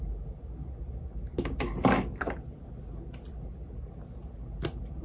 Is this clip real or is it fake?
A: real